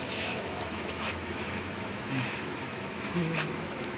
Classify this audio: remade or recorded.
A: remade